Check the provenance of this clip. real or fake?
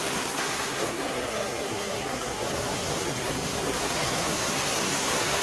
fake